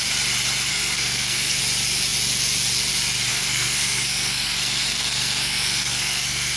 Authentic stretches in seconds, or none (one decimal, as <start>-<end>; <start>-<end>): 0.0-0.7; 1.6-3.3